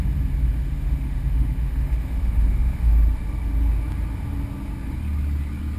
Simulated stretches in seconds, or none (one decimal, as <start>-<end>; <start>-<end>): 0.4-2.9